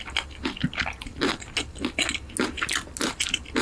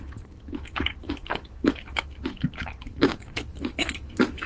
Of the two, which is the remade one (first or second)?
second